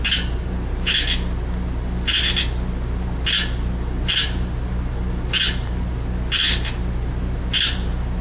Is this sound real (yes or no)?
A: yes